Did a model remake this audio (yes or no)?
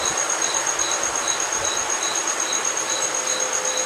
no